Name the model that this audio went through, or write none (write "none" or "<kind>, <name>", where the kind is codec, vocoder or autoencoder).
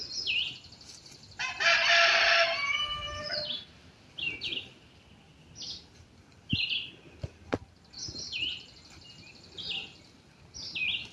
none